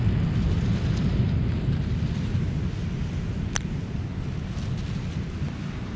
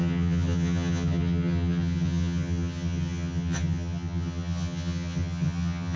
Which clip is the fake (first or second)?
second